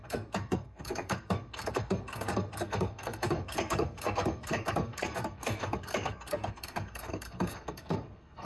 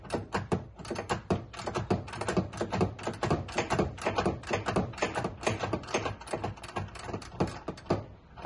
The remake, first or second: first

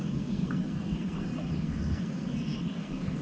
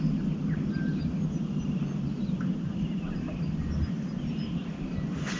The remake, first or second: first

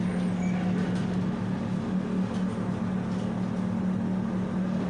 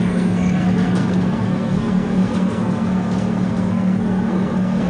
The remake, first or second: second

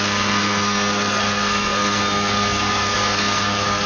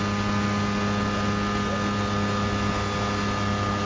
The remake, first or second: first